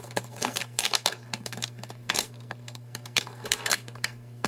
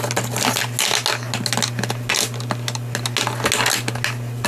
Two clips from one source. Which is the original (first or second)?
second